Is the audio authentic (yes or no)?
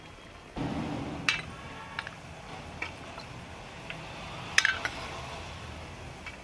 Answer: yes